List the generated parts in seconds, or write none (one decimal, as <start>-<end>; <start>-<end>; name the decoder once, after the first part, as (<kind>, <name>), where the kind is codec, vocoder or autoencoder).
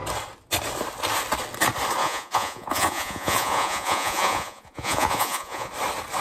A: 2.0-5.7 (vocoder, Vocos)